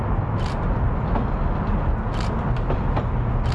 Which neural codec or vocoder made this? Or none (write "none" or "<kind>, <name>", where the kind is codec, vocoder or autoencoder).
none